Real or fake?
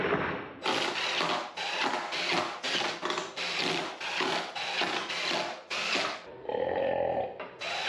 real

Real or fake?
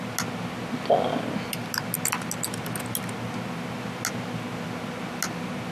real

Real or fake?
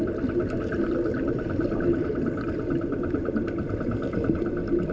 real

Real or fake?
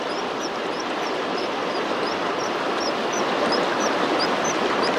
real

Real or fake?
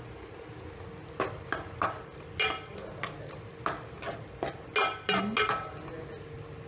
real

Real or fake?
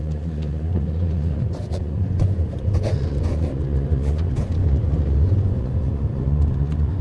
fake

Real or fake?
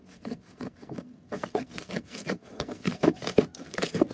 fake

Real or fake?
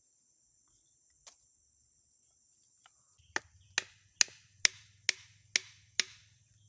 real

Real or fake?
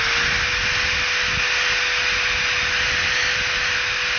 real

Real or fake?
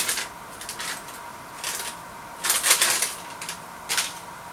real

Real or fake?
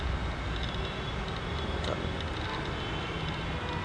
real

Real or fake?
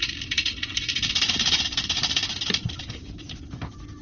fake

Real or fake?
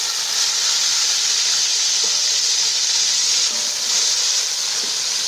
real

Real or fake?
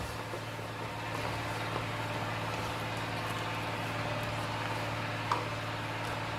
real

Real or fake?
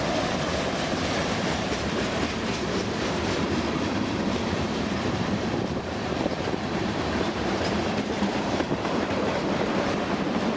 fake